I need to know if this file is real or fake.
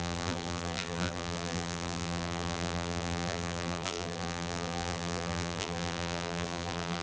fake